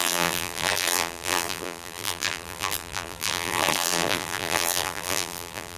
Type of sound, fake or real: fake